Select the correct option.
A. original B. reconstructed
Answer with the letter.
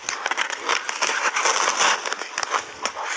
A